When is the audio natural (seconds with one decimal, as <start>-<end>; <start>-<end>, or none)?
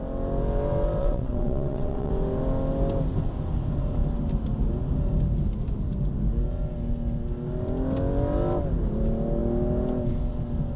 0.0-1.0; 2.1-10.8